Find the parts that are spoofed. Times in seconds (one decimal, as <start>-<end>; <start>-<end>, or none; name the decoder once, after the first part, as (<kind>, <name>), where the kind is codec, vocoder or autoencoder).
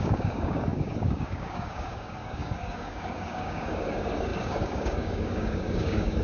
0.0-6.2 (codec, DAC)